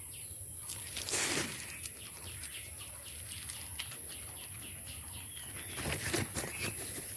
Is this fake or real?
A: real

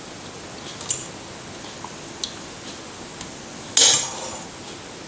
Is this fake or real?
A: real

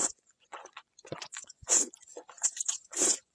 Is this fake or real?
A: fake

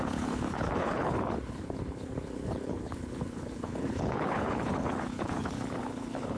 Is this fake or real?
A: fake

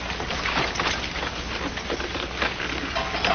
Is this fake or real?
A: real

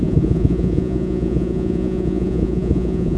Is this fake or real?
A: fake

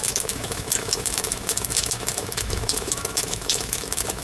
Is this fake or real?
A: fake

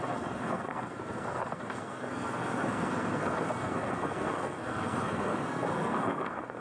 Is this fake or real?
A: fake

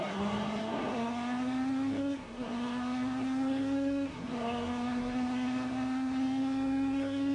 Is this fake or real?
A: fake